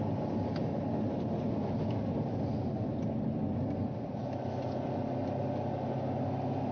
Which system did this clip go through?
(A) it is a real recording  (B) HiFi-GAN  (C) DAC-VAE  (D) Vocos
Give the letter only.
A